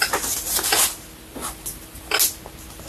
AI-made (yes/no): no